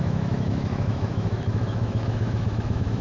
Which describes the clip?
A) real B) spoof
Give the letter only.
B